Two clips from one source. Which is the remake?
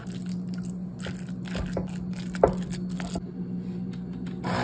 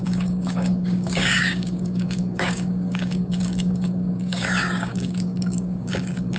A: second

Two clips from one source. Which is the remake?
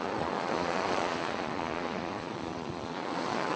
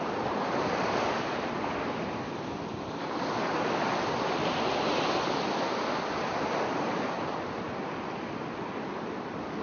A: first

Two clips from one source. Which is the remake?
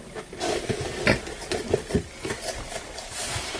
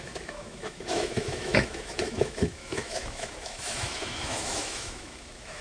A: second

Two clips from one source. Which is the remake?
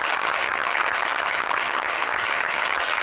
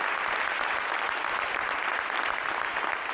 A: first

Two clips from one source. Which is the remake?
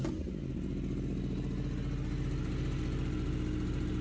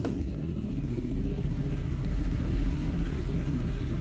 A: second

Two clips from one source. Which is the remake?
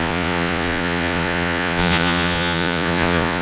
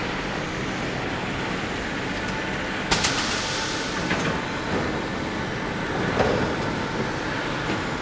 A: first